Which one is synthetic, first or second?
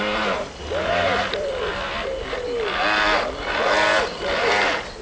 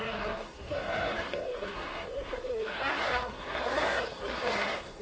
second